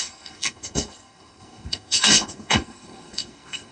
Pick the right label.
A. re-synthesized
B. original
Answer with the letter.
A